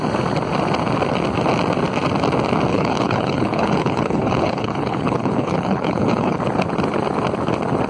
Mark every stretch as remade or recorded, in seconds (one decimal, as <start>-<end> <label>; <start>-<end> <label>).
0.0-2.7 recorded; 2.7-6.4 remade; 6.4-7.9 recorded